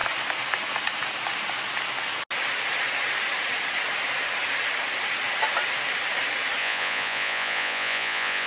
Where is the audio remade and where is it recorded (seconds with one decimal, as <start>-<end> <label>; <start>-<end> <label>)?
0.0-6.6 recorded; 6.6-8.5 remade